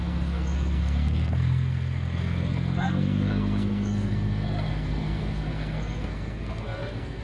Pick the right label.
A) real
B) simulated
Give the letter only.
B